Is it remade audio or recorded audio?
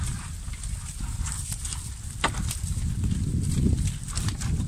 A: recorded